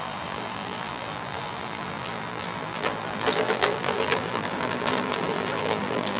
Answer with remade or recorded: remade